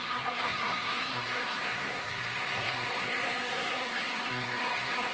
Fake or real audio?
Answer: fake